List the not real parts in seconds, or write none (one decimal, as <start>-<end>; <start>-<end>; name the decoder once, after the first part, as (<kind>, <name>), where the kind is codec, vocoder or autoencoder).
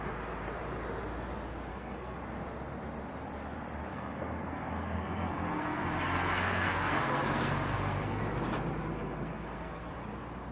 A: 1.7-2.2 (codec, SNAC); 3.9-8.2; 8.9-9.9